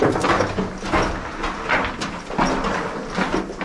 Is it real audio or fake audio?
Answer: real